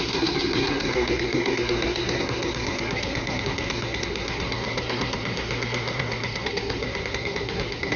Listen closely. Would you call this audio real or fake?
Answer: fake